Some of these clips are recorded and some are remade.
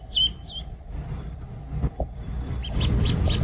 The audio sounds remade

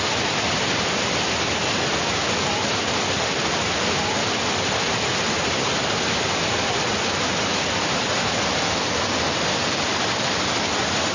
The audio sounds recorded